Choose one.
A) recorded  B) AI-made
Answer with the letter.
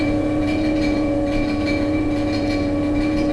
B